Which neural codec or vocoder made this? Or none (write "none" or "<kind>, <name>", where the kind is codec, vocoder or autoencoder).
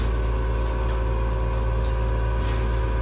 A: none